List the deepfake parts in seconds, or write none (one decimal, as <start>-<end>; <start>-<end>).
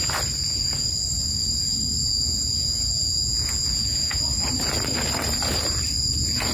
2.0-4.2